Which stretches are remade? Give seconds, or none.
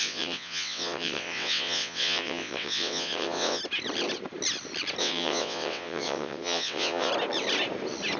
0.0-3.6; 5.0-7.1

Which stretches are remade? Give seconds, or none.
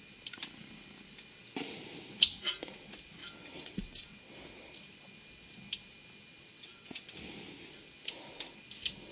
3.2-4.3; 6.5-7.0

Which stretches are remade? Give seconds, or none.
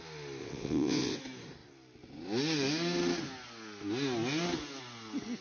0.4-1.2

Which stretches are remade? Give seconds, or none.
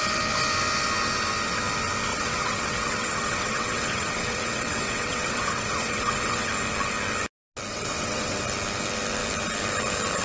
2.1-6.5; 7.7-8.4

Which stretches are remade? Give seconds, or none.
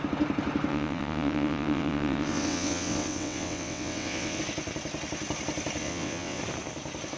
0.7-4.4; 5.8-6.4